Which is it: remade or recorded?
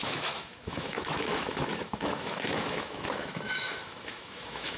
remade